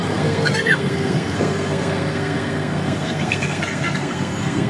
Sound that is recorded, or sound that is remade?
remade